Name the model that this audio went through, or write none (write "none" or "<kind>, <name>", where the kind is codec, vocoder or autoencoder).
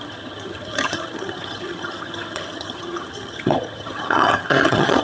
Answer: vocoder, HiFi-GAN